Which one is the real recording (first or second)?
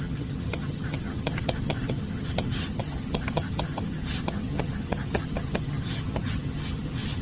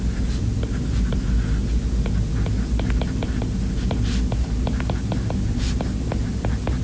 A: second